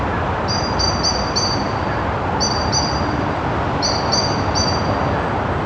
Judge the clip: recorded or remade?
remade